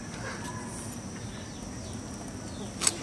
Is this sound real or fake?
real